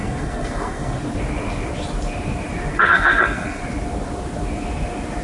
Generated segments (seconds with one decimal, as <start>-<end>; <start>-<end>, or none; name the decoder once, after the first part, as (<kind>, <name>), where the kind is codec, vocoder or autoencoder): 0.0-1.0 (codec, SNAC); 2.7-3.6